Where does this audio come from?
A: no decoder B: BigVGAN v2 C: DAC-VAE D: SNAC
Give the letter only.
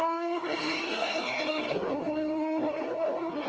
D